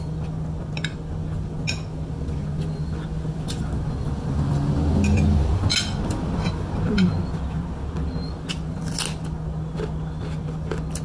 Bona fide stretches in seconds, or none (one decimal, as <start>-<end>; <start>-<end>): 0.0-11.0